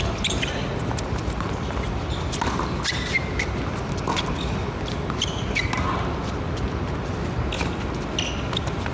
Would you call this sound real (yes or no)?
yes